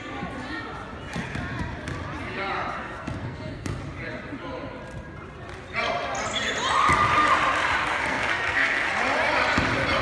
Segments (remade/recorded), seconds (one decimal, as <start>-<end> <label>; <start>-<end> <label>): 0.0-2.8 recorded; 2.8-3.8 remade; 3.8-7.8 recorded; 7.8-8.9 remade; 8.9-10.0 recorded